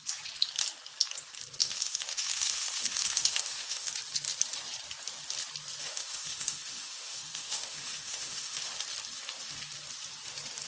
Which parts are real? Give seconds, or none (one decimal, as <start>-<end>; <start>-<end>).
0.0-1.6; 3.9-5.8; 8.7-10.7

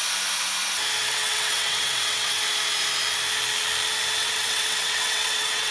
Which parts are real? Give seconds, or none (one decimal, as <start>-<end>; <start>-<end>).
0.0-1.0; 2.4-4.2